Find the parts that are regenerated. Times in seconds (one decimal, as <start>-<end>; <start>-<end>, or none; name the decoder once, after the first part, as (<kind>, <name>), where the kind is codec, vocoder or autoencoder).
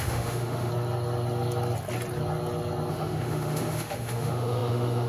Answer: 0.0-0.7 (autoencoder, DAC-VAE); 2.9-5.1